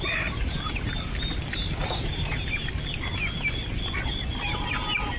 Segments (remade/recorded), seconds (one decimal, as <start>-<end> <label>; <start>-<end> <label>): 0.0-1.8 recorded; 1.8-2.7 remade; 2.7-5.2 recorded